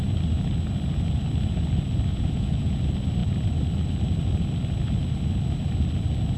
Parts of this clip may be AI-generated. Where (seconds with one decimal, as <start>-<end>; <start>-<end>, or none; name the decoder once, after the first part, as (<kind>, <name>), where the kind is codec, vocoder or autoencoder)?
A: 2.1-2.8 (vocoder, Vocos)